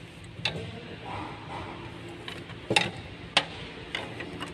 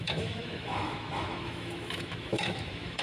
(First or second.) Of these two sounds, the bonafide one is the first